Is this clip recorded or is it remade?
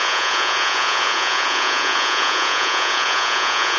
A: remade